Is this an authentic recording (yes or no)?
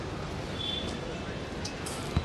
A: yes